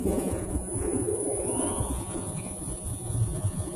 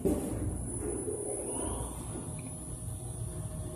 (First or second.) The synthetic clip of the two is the first